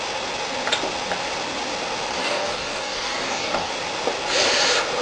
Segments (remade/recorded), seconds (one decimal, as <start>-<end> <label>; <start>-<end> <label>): 0.0-2.2 recorded; 2.2-3.7 remade; 3.7-5.0 recorded